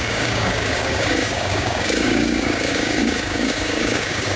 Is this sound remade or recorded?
remade